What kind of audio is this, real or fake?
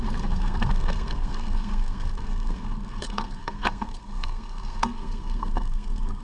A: fake